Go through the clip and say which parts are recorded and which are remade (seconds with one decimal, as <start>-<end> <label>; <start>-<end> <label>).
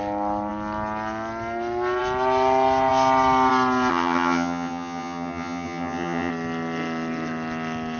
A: 0.0-3.9 recorded; 3.9-6.3 remade; 6.3-8.0 recorded